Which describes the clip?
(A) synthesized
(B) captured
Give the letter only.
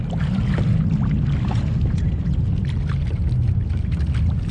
B